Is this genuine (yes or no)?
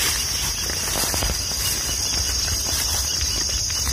yes